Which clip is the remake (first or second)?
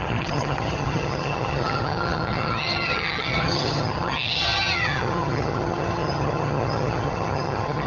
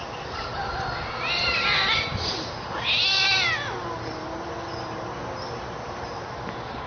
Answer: first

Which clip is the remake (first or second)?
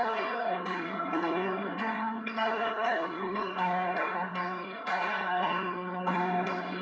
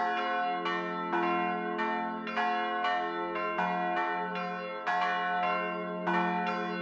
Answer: first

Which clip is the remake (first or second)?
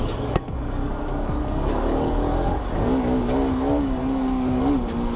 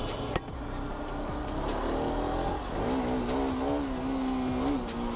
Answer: first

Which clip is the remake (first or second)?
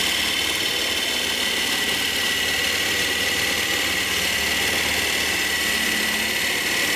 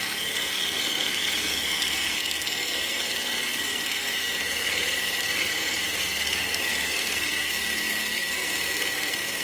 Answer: second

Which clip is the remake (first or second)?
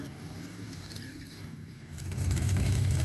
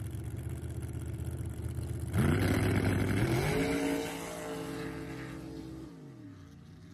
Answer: first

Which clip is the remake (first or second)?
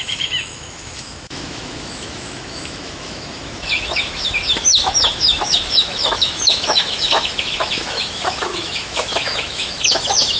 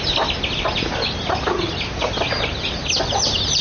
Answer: first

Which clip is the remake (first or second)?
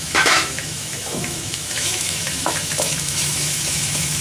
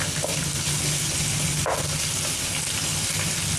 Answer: first